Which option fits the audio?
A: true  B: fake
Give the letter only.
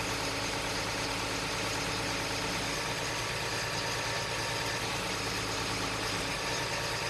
A